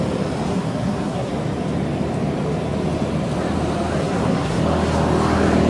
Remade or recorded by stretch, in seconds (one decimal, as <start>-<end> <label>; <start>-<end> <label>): 0.0-0.5 recorded; 0.5-1.3 remade; 1.3-4.0 recorded; 4.0-4.6 remade; 4.6-5.7 recorded